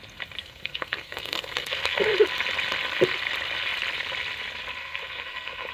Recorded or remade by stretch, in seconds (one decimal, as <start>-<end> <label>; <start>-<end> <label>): 0.0-0.4 recorded; 0.4-2.0 remade; 2.0-4.8 recorded; 4.8-5.7 remade